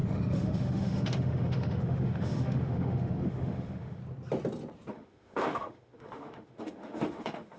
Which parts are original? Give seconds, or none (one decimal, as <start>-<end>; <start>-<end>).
4.0-4.9